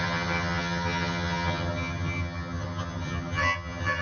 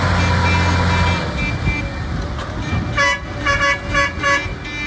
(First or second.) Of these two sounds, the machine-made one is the first